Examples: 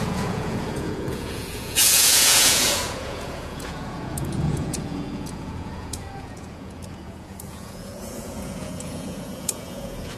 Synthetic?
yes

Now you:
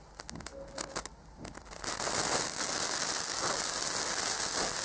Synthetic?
no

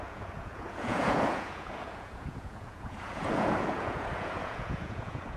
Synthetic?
yes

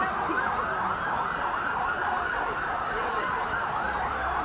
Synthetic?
no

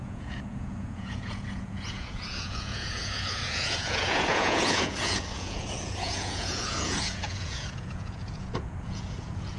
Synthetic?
yes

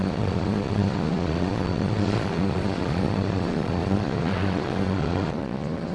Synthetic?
yes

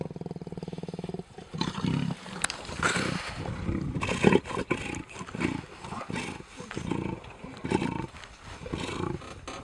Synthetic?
no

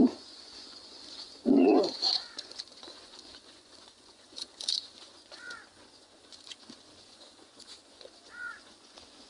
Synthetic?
yes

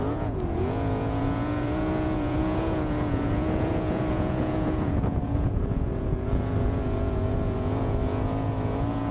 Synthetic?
yes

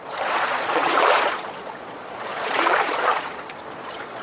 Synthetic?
yes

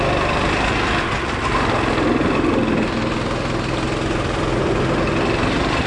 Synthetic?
no